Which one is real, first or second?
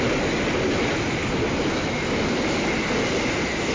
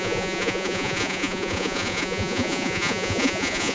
first